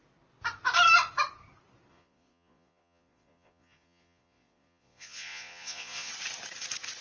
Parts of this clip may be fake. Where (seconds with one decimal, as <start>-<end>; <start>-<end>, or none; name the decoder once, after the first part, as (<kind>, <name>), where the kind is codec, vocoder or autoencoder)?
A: 1.9-6.1 (vocoder, Vocos)